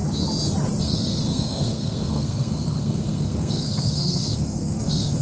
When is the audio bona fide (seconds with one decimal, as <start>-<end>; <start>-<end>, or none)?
0.0-0.8